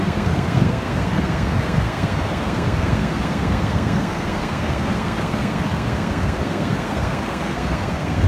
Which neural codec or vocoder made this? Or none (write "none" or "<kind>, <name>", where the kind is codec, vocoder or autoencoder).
codec, SNAC